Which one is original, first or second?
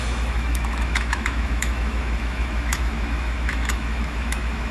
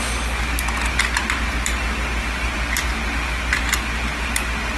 second